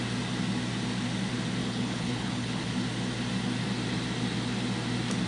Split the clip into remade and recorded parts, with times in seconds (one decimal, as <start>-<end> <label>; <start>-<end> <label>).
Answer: 0.0-1.6 recorded; 1.6-2.7 remade; 2.7-5.3 recorded